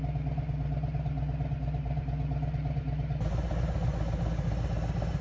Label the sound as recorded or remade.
recorded